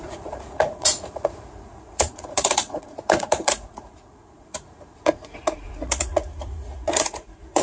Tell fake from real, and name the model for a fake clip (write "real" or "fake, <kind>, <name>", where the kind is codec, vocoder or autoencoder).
fake, vocoder, Vocos